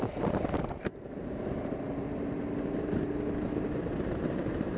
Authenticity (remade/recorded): remade